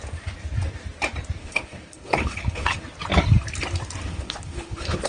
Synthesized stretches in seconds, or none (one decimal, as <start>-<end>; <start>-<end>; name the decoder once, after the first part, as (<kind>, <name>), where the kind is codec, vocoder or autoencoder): 1.4-2.8 (codec, HILCodec); 4.1-5.1